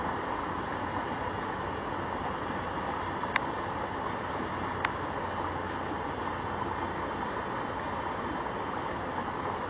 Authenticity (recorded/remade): recorded